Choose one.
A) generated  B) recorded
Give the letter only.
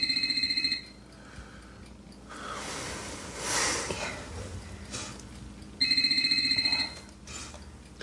B